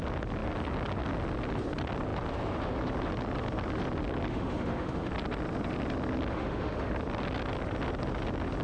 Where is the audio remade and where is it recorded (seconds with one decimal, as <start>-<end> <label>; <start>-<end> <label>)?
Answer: 0.0-4.3 recorded; 4.3-5.1 remade; 5.1-6.3 recorded; 6.3-6.9 remade; 6.9-8.6 recorded